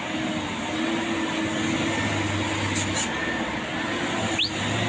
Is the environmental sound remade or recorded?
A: recorded